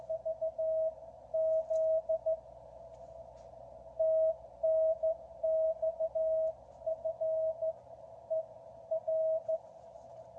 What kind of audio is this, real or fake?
real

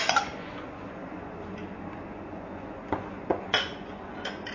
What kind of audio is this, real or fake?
fake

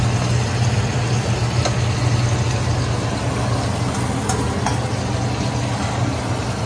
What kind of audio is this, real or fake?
real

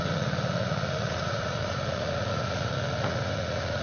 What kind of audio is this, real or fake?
fake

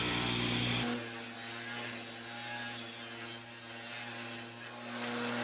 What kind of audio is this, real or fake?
real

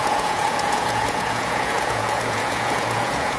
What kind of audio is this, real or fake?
fake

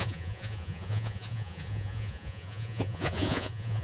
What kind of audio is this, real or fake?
fake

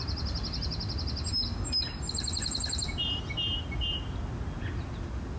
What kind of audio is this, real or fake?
real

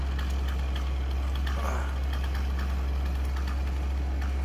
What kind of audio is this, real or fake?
real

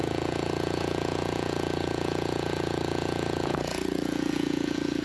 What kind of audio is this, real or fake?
fake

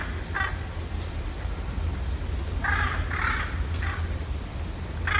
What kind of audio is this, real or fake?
real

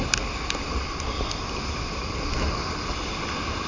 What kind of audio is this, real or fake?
real